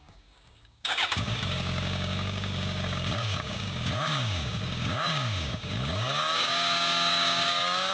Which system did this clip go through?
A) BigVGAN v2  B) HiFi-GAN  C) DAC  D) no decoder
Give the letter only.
C